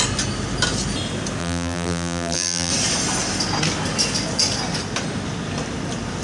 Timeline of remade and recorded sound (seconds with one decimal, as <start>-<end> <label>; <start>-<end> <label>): 0.0-1.4 recorded; 1.4-2.7 remade; 2.7-6.2 recorded